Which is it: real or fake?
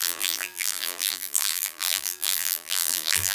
fake